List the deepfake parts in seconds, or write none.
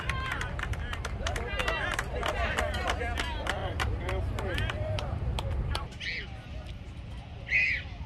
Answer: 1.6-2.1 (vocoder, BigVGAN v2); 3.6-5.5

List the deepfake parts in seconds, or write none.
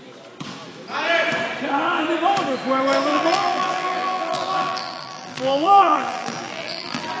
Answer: 3.1-7.2 (vocoder, BigVGAN v2)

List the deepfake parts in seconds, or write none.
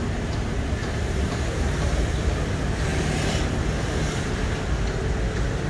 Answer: 0.8-2.1 (vocoder, BigVGAN v2)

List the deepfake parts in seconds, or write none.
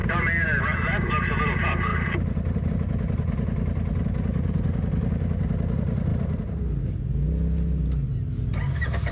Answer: 0.0-0.6 (vocoder, BigVGAN v2); 1.9-2.7; 4.3-4.8; 6.1-7.0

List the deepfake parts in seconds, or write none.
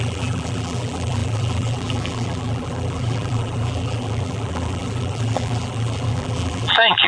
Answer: 0.0-7.1 (vocoder, BigVGAN v2)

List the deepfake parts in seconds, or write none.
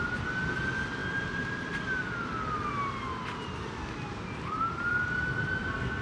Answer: none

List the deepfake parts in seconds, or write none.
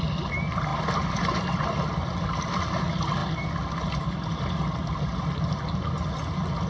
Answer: 0.7-2.1 (vocoder, BigVGAN v2); 3.2-5.4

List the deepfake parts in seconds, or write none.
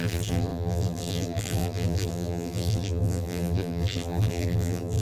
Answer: 0.0-5.0 (vocoder, BigVGAN v2)